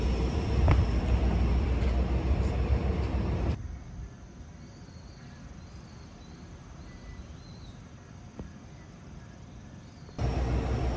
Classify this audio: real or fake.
real